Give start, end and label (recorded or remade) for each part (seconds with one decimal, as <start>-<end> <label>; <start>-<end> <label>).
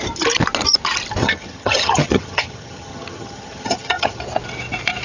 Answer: 0.0-1.2 recorded; 1.2-4.2 remade; 4.2-5.0 recorded